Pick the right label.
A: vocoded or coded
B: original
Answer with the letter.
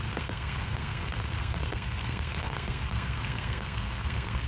A